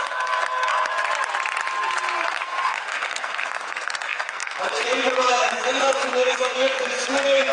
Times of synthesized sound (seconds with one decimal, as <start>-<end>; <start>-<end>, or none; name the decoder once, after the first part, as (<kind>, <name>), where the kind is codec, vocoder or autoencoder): 0.0-0.9 (codec, SNAC); 2.3-7.5